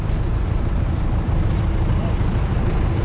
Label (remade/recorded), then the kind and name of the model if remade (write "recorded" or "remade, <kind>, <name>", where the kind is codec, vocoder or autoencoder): recorded